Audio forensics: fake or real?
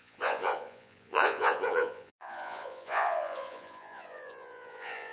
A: fake